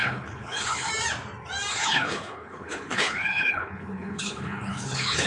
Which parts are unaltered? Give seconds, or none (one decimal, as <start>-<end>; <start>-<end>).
0.9-1.7